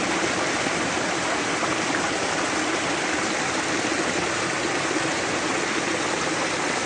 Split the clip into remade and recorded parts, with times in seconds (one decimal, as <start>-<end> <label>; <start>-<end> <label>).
0.0-6.9 recorded